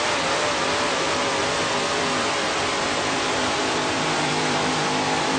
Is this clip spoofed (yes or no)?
yes